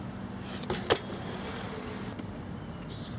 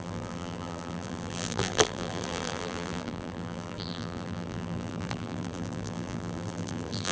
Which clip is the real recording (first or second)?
first